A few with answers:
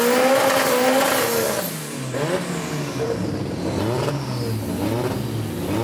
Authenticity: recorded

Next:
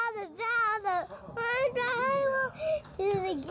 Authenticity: recorded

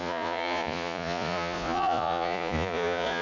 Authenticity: remade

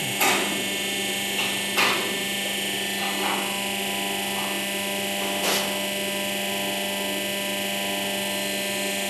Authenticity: recorded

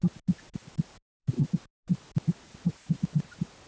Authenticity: recorded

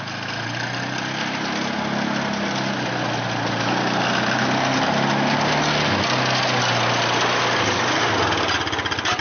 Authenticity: recorded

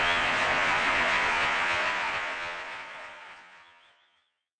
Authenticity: remade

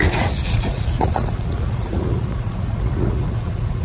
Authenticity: remade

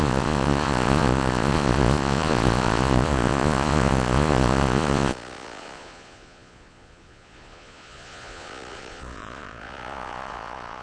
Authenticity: remade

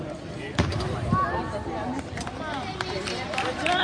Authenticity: recorded